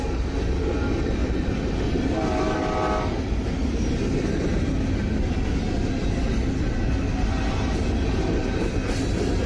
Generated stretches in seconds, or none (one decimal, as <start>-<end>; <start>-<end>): none